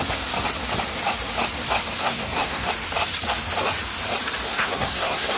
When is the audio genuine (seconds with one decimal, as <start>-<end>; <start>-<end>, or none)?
0.0-2.0; 2.7-4.5